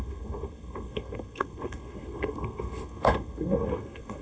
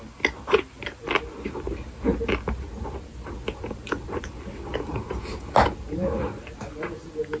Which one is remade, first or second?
first